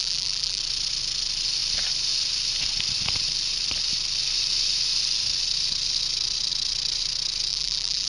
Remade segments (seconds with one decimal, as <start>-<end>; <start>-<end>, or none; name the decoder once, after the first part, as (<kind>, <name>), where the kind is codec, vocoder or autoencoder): 0.0-0.6 (vocoder, BigVGAN v2); 7.5-8.1